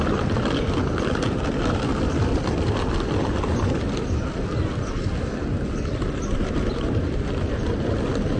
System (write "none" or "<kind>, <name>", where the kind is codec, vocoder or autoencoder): none